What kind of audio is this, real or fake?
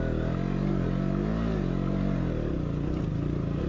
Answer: real